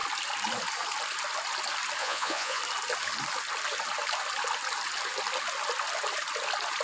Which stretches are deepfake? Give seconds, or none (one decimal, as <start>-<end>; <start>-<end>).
2.0-2.6